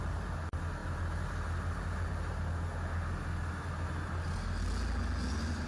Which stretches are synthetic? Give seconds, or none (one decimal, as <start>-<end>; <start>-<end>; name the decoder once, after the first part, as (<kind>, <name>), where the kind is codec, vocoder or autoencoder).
none